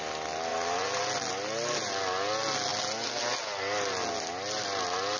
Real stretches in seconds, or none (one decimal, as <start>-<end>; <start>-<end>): 0.0-0.5; 1.0-5.2